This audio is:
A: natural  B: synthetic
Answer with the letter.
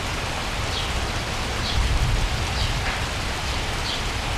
B